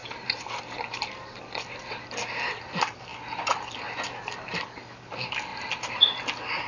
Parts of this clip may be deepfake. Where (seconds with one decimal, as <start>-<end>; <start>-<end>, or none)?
0.0-1.4; 5.5-6.0